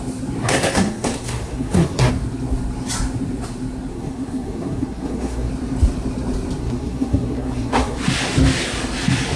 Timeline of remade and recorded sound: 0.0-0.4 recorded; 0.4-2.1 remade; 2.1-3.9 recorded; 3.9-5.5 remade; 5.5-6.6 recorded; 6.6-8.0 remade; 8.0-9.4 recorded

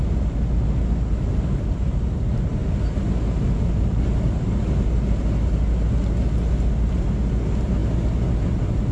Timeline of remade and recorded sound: 0.0-8.9 recorded